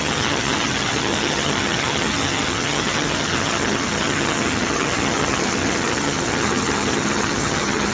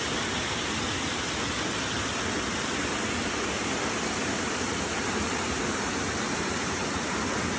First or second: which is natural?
second